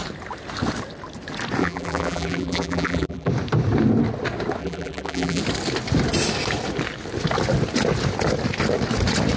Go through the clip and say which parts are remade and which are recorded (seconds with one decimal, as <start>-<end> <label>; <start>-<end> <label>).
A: 0.0-1.6 recorded; 1.6-3.3 remade; 3.3-4.6 recorded; 4.6-5.4 remade; 5.4-9.4 recorded